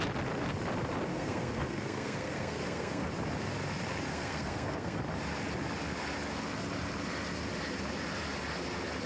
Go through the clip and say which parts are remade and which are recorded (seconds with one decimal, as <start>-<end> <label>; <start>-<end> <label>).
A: 0.0-1.1 recorded; 1.1-3.1 remade; 3.1-4.1 recorded; 4.1-5.0 remade; 5.0-9.1 recorded